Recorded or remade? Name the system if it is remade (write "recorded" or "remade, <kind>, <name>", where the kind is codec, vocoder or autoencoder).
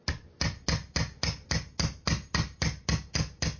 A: recorded